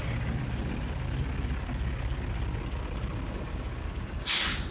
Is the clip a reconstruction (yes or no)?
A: no